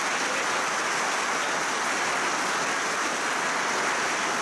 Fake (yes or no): no